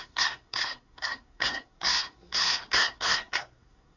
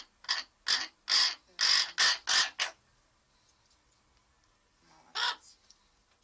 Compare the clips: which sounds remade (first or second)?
first